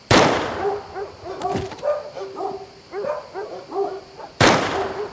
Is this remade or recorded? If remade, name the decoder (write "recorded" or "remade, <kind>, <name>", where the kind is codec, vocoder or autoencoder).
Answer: recorded